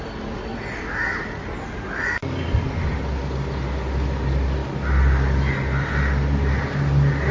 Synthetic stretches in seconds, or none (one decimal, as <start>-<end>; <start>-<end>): none